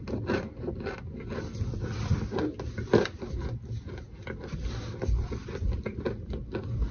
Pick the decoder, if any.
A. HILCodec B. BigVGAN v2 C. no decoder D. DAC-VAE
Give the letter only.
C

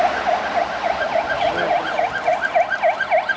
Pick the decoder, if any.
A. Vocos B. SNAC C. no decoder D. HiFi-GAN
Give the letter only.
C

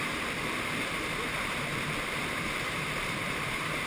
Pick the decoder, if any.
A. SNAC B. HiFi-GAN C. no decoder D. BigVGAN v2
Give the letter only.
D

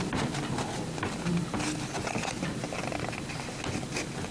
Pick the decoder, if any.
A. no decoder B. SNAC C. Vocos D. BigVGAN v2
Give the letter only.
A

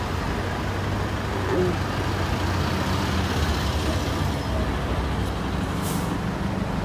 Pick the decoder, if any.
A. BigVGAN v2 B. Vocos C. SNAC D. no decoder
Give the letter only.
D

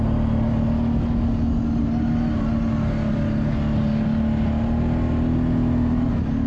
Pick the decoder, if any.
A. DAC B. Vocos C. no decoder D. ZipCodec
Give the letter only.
C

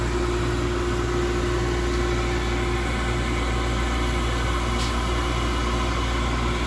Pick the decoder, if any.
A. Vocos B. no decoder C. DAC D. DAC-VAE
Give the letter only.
B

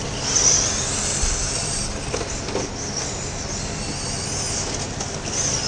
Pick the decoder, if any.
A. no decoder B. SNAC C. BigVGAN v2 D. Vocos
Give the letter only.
A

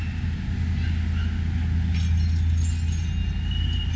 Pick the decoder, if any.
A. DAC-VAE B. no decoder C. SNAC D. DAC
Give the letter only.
B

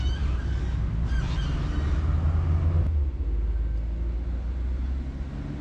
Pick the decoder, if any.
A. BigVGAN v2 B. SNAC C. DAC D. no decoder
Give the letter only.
D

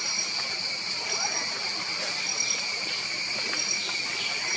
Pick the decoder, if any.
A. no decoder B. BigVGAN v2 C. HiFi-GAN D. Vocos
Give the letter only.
A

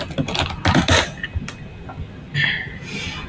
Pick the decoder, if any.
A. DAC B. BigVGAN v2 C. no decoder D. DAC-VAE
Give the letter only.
C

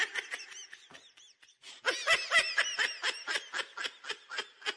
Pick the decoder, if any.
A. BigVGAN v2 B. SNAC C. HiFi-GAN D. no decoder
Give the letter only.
D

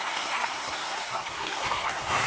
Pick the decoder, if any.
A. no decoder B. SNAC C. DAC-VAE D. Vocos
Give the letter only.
B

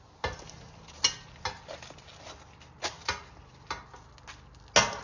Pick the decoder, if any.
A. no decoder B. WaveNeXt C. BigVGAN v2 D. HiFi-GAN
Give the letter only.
A